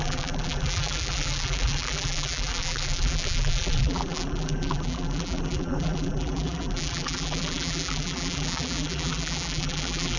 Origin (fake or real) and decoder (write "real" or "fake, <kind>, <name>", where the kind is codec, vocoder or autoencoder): fake, vocoder, BigVGAN v2